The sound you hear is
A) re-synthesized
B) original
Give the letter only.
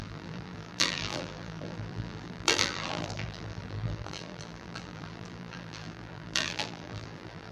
A